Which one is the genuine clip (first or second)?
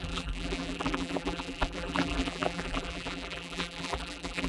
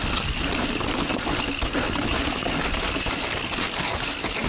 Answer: second